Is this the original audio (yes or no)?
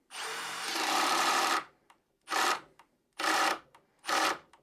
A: no